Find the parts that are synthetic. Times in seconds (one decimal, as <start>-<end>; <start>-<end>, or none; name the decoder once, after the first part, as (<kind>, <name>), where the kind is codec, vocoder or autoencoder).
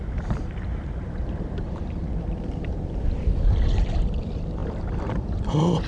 0.0-4.6 (vocoder, BigVGAN v2); 5.1-5.9